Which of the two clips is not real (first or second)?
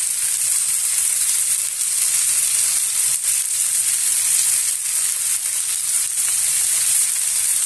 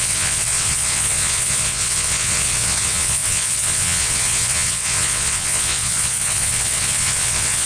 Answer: second